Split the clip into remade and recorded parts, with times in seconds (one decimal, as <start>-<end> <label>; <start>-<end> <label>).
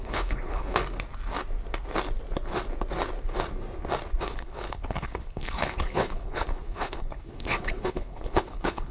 0.0-0.8 remade; 0.8-4.2 recorded; 4.2-8.9 remade